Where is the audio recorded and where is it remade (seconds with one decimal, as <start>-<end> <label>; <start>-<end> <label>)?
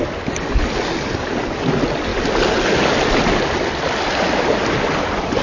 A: 0.0-5.4 recorded